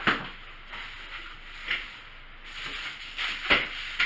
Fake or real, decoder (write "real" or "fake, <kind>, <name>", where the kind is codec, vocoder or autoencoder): real